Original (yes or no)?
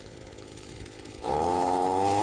no